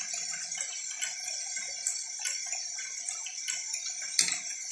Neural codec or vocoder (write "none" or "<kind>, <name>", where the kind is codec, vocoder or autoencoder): none